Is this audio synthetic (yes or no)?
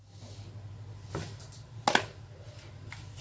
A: no